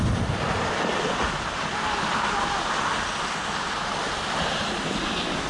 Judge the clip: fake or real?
real